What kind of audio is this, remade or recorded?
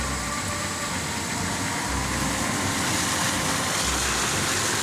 recorded